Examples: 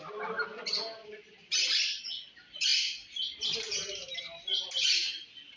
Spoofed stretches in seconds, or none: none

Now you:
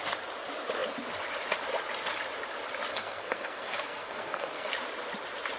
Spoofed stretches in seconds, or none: 2.9-4.7 (codec, SNAC)

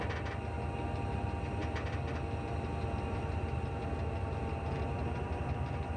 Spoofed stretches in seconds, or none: none

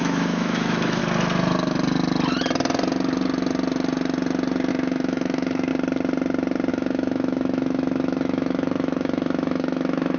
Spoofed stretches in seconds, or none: 0.0-1.0 (autoencoder, DAC-VAE); 4.7-5.7; 6.7-10.2

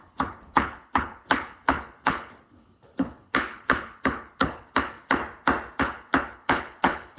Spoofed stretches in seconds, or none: 0.0-5.2 (codec, HILCodec); 5.8-7.2

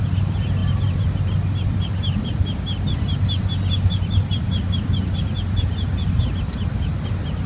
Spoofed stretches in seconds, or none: none